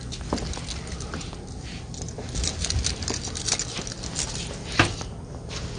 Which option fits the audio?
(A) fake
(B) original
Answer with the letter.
B